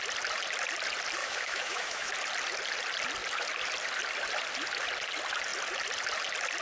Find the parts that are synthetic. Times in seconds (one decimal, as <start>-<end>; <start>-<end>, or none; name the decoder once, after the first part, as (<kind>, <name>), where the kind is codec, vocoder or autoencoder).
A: 1.2-2.1 (autoencoder, DAC-VAE)